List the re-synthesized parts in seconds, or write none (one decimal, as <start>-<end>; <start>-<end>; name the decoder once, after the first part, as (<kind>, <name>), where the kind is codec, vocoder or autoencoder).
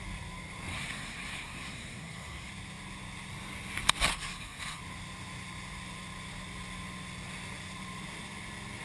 0.7-2.5 (codec, SNAC); 4.1-4.8